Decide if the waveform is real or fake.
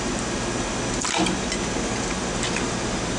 real